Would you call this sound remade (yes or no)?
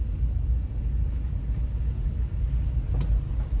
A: no